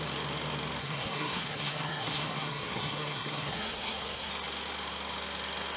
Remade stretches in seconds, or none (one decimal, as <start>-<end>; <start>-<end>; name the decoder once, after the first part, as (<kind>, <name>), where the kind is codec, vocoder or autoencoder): 0.8-4.3 (codec, SNAC)